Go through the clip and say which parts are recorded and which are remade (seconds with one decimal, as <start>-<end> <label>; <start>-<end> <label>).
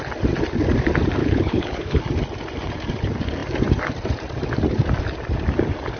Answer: 0.0-1.2 recorded; 1.2-2.0 remade; 2.0-6.0 recorded